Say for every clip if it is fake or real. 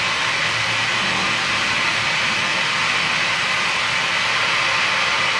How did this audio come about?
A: real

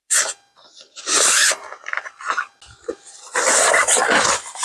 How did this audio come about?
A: real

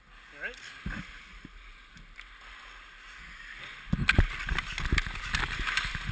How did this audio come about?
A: real